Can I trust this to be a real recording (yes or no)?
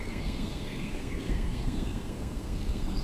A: no